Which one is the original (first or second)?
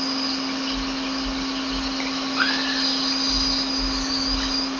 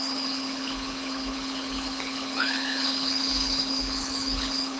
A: first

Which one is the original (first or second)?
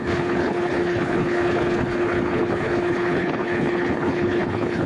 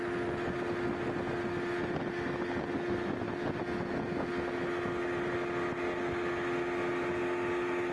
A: second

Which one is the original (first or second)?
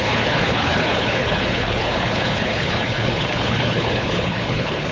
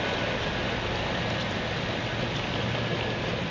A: second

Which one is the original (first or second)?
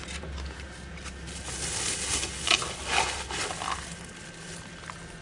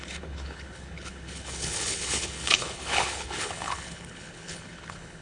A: first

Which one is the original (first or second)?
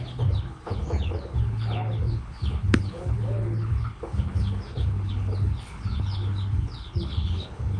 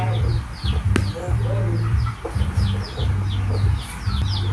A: second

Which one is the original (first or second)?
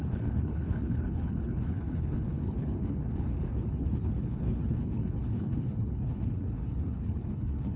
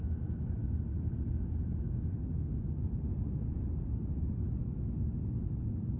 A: second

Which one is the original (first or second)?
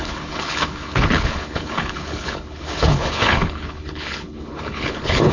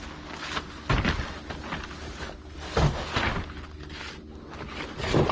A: second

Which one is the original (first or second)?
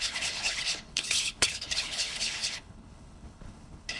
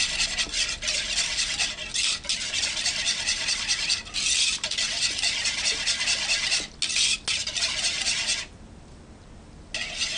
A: second